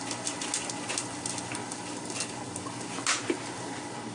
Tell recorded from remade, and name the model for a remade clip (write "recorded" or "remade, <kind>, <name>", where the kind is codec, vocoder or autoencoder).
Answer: recorded